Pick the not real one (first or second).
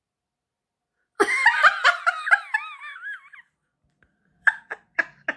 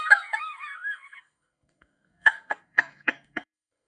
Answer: second